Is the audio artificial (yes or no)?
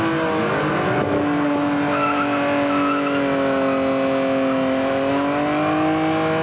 no